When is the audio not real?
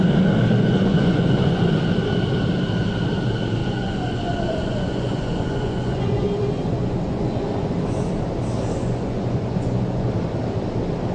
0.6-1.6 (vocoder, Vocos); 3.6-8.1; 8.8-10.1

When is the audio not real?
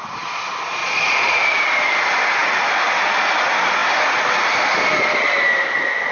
0.8-1.4 (vocoder, Vocos)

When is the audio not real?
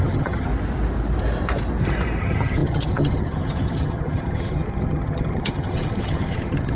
0.0-0.5 (vocoder, HiFi-GAN); 2.2-6.8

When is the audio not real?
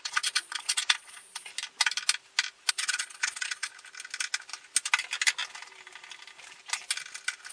0.0-1.5 (vocoder, Vocos); 2.7-3.7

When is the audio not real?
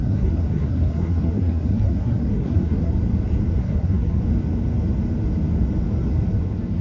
0.0-2.9 (codec, SNAC); 3.6-4.2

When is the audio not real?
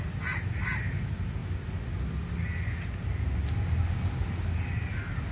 none